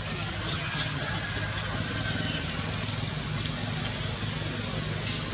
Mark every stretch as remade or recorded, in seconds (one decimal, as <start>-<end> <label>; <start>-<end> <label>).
0.0-0.5 recorded; 0.5-1.1 remade; 1.1-5.3 recorded